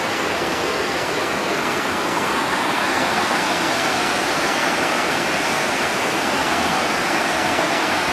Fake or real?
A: fake